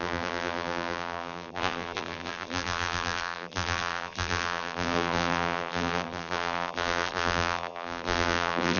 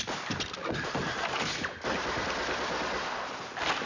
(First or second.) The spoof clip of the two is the first